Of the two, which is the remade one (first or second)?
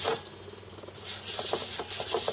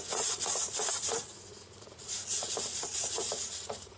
second